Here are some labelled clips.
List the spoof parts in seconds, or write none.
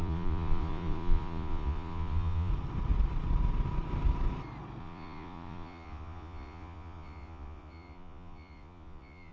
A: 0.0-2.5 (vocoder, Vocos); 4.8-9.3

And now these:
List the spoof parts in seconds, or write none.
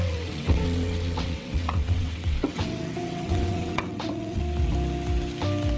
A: 0.0-4.4 (vocoder, WaveNeXt)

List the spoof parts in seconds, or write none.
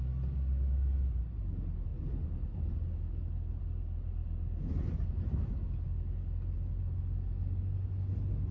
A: none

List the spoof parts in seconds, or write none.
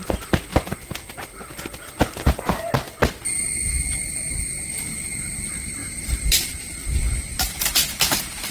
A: 5.8-6.5 (vocoder, BigVGAN v2)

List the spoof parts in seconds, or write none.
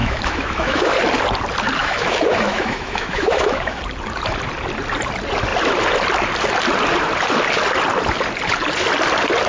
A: 0.0-0.9 (autoencoder, DAC-VAE); 1.8-3.8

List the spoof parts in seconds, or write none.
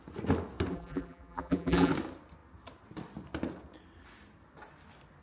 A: 0.7-1.9 (vocoder, BigVGAN v2)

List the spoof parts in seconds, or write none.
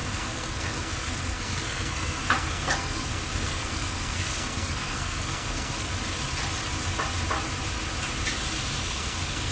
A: 0.0-5.9 (codec, SNAC); 8.8-9.5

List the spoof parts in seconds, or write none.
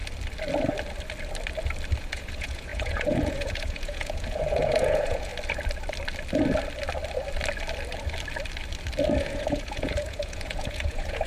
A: 2.0-5.3 (vocoder, Vocos); 9.2-11.3